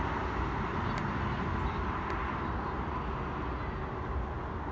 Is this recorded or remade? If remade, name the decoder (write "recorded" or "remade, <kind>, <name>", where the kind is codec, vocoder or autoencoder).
recorded